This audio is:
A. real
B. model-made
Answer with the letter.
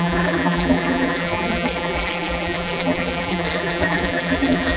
B